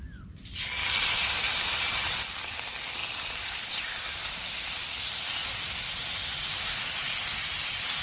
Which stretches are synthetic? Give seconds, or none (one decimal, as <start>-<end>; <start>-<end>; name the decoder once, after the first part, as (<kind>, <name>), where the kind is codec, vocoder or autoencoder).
0.8-2.2 (vocoder, BigVGAN v2); 3.0-3.9; 5.4-8.0